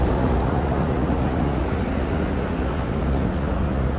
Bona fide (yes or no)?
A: no